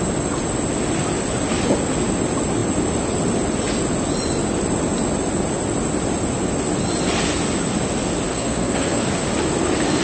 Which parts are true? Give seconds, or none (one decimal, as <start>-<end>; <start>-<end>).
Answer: 0.0-8.3; 9.1-10.0